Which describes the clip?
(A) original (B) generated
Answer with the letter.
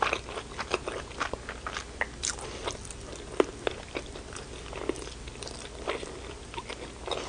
A